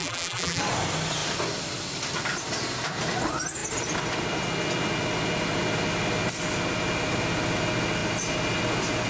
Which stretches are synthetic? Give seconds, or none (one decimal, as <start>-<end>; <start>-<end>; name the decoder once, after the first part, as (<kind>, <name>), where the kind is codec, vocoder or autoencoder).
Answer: 0.0-0.6 (vocoder, BigVGAN v2)